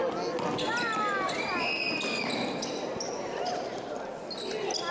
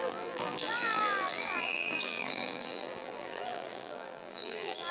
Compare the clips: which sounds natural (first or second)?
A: first